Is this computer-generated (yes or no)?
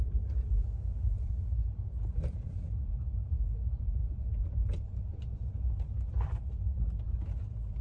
yes